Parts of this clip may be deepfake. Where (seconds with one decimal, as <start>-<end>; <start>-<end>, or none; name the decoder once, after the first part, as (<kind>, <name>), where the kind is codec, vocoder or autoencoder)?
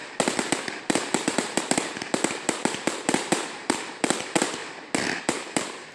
0.8-4.6 (vocoder, BigVGAN v2); 5.2-5.9